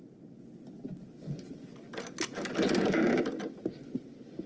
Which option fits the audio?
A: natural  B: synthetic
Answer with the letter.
A